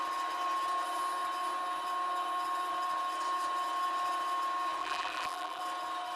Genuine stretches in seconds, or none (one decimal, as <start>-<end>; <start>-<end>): 0.0-4.8; 5.6-6.2